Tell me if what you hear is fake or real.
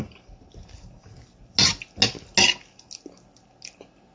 real